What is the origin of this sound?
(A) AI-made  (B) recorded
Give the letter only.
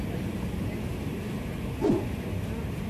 B